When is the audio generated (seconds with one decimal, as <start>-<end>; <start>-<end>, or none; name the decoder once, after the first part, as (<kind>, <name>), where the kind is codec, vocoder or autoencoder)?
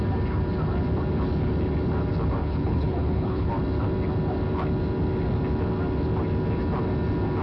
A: 2.4-3.5 (codec, HILCodec)